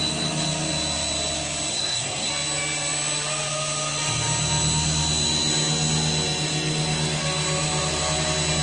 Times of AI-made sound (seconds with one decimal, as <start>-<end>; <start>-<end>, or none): 1.7-2.3